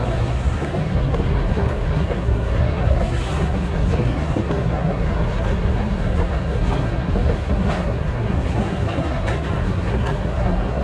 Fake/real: fake